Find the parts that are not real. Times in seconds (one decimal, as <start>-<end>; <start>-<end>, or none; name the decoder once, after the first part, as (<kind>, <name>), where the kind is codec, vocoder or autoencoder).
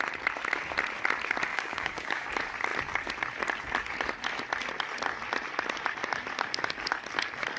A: 1.5-2.3 (codec, DAC)